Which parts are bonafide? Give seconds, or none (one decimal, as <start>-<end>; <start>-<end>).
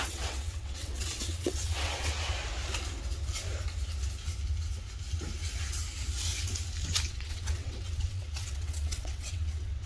2.1-7.1